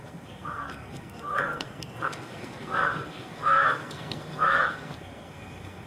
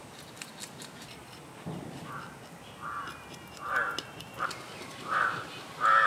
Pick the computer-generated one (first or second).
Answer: first